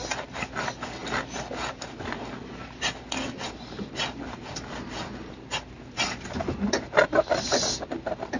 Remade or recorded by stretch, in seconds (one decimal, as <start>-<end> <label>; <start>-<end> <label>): 0.0-8.4 recorded